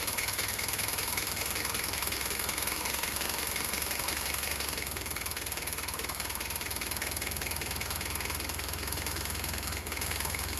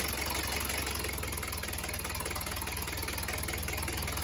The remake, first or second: first